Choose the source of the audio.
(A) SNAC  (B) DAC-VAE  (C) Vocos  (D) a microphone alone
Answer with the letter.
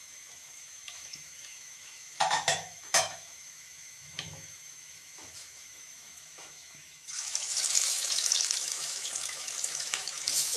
B